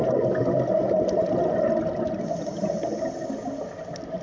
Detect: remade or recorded recorded